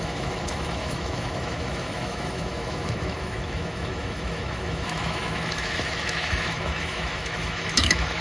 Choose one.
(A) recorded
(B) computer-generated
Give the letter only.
B